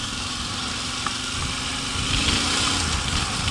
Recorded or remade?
recorded